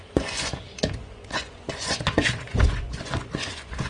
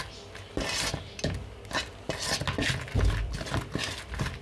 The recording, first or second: second